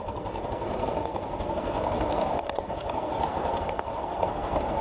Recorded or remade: remade